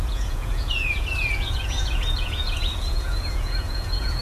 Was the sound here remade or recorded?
remade